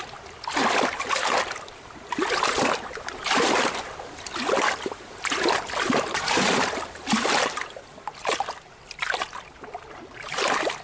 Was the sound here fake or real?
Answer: real